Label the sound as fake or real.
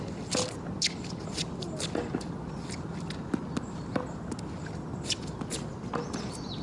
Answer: real